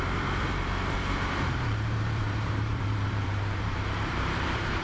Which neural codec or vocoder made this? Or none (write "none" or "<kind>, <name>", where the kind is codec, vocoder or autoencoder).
vocoder, BigVGAN v2